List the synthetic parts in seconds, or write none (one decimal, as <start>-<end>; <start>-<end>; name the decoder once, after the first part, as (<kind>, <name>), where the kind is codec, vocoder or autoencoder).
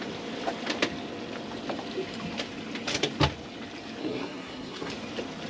4.0-4.9 (codec, SNAC)